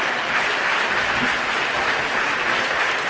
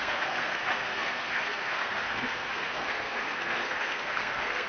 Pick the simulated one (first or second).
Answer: second